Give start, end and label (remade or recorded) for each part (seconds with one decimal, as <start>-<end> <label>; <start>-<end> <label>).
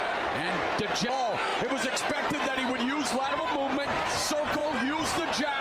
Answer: 0.0-4.6 recorded; 4.6-5.6 remade